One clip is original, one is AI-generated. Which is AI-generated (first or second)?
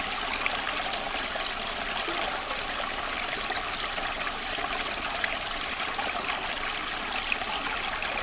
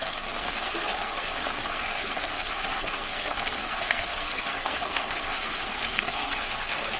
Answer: second